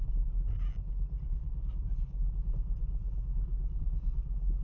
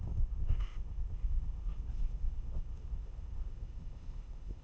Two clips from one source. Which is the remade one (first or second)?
second